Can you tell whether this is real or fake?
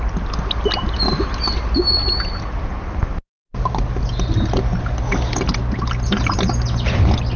real